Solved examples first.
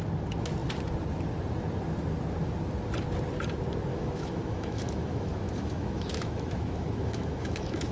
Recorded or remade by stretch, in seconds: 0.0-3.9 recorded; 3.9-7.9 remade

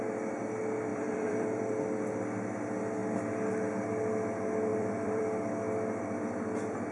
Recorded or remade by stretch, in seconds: 0.0-0.9 recorded; 0.9-1.7 remade; 1.7-4.7 recorded; 4.7-5.2 remade; 5.2-6.9 recorded